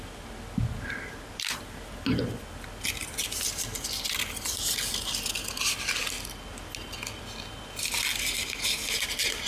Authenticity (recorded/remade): recorded